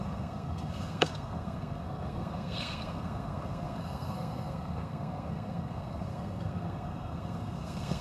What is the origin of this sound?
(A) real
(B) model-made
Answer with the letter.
B